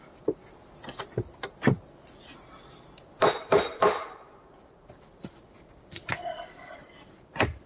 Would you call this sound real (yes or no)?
yes